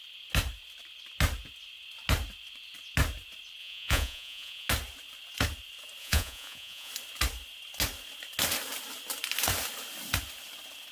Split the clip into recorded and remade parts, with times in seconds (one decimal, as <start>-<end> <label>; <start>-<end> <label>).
0.0-3.6 recorded; 3.6-4.7 remade; 4.7-6.0 recorded; 6.0-6.9 remade; 6.9-10.9 recorded